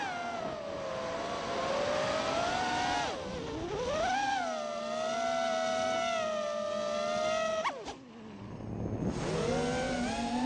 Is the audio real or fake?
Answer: real